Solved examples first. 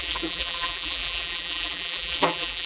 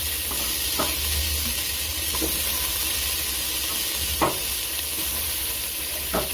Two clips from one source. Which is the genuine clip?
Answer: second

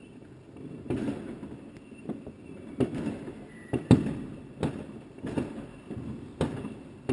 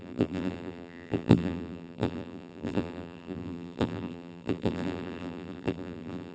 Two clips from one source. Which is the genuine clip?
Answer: first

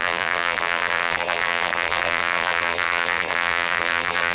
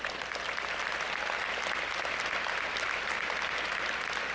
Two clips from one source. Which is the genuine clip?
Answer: second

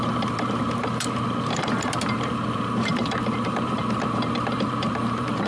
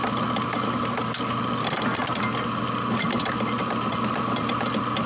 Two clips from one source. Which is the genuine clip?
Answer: second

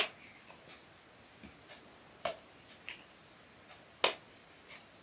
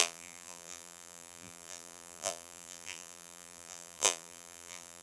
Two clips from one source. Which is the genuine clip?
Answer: first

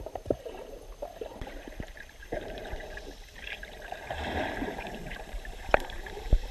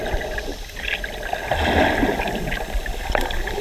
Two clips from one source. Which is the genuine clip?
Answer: second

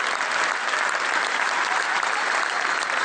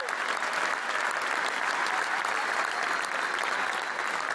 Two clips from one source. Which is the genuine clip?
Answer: second